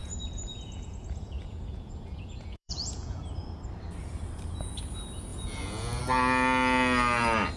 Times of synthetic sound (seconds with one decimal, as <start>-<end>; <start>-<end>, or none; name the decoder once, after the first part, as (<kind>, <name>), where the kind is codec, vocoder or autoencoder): 0.0-3.2 (vocoder, Vocos); 5.3-6.0